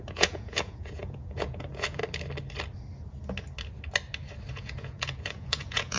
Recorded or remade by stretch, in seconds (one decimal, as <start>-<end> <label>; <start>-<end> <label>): 0.0-2.0 remade; 2.0-4.5 recorded; 4.5-6.0 remade